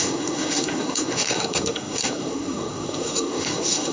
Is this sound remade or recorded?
remade